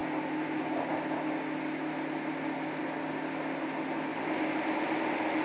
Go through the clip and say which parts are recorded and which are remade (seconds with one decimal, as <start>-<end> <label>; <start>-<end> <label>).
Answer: 0.0-5.4 recorded